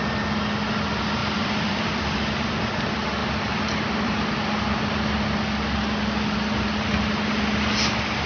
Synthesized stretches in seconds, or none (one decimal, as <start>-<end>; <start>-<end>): 1.2-2.3